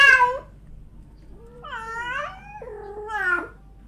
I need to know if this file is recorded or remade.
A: recorded